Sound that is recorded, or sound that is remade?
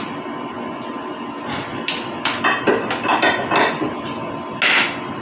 recorded